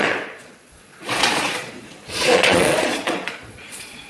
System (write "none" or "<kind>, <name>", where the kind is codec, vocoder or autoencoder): vocoder, Vocos